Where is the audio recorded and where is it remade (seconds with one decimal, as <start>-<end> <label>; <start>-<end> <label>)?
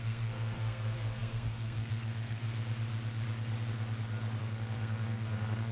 0.0-2.4 remade; 2.4-4.4 recorded; 4.4-5.7 remade